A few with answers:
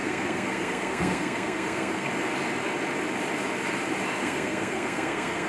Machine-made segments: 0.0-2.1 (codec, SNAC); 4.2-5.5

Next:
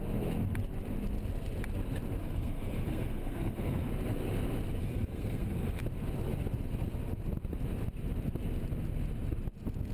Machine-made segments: 2.2-3.9 (codec, SNAC); 4.8-5.8

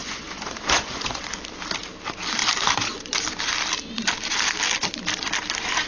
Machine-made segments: 0.0-1.2 (vocoder, Vocos)

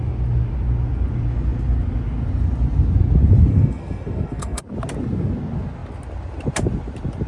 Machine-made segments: 3.5-4.6 (codec, SNAC)